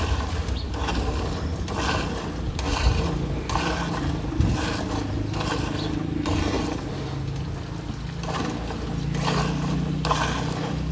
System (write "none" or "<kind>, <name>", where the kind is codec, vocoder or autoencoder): none